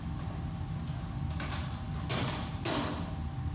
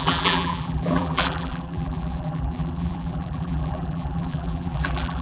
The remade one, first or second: second